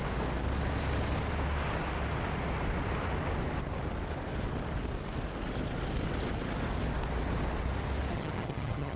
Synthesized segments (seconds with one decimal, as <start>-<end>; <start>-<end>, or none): 8.1-9.0